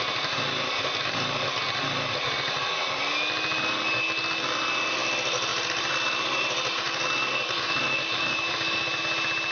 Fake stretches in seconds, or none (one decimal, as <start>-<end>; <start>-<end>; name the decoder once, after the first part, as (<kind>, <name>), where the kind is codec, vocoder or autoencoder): 5.5-9.0 (vocoder, BigVGAN v2)